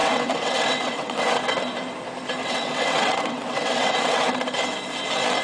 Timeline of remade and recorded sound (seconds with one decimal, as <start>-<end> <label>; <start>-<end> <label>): 0.0-1.4 remade; 1.4-2.4 recorded; 2.4-4.3 remade; 4.3-5.4 recorded